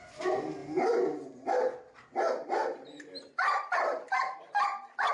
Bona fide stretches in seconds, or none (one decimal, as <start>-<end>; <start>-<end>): 0.0-5.1

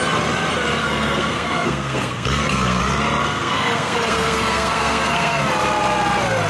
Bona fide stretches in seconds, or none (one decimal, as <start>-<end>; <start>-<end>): 0.0-0.8; 2.8-3.2; 5.4-6.5

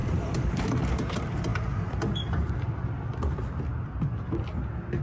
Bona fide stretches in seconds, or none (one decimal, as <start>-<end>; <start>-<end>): 0.6-5.0

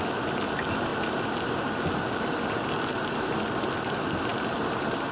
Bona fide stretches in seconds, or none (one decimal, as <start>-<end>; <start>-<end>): 0.0-4.3

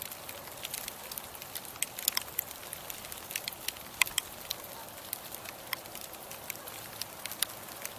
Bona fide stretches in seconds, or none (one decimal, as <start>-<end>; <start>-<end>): 0.0-4.8; 5.4-8.0